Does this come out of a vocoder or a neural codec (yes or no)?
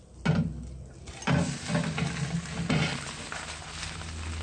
no